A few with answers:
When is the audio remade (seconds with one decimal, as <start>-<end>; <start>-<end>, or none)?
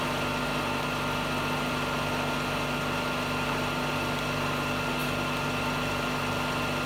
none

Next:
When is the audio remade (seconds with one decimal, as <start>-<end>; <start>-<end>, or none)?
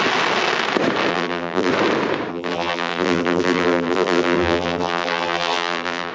1.1-1.7; 2.3-6.1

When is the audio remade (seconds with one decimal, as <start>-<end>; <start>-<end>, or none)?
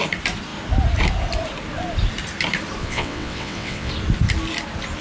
2.8-3.9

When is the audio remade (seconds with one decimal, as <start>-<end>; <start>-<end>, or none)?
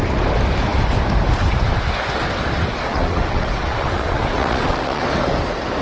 2.9-5.0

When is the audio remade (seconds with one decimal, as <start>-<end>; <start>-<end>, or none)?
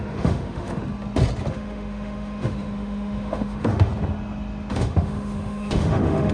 0.0-0.8; 1.5-3.9; 4.7-6.3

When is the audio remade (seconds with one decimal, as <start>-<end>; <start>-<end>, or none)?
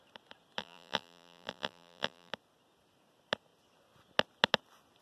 0.6-2.3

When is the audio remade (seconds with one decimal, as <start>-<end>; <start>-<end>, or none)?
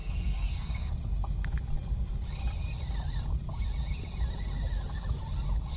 0.0-0.9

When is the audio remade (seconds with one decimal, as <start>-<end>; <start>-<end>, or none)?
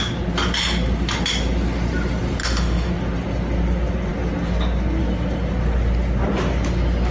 2.4-2.9